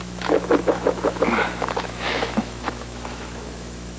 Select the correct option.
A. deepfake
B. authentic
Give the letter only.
A